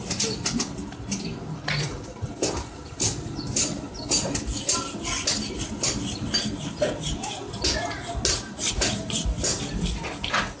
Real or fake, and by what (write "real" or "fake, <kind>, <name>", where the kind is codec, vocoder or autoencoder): real